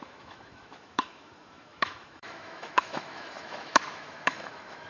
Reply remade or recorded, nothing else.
remade